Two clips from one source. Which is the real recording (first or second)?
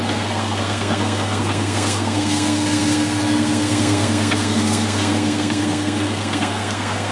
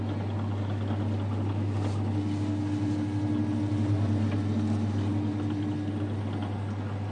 second